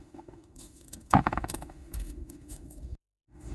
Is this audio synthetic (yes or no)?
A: yes